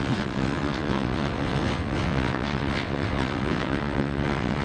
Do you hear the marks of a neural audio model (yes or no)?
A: yes